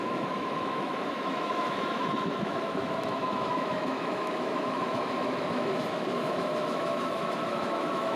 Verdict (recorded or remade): remade